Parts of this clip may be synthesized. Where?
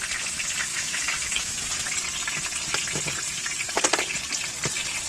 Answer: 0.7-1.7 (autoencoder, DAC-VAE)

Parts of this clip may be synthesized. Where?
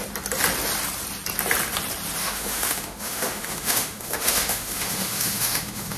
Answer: 2.2-6.0 (autoencoder, DAC-VAE)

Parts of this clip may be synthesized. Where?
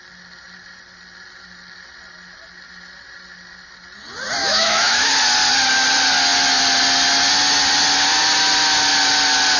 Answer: 4.4-5.1 (autoencoder, DAC-VAE)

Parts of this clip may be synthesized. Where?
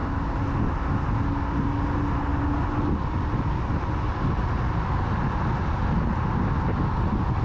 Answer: none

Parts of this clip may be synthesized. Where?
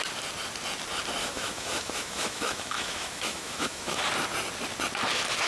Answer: 1.2-4.0 (autoencoder, DAC-VAE)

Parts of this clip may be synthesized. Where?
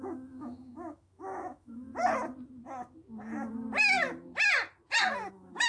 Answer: 0.0-1.9 (autoencoder, DAC-VAE); 5.3-5.7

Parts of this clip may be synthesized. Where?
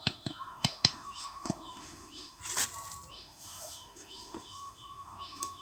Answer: 0.0-2.4 (autoencoder, DAC-VAE); 3.1-5.6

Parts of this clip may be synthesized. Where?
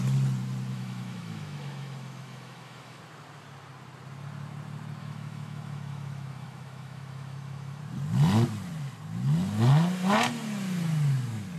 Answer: 0.7-3.0 (autoencoder, DAC-VAE); 5.0-7.8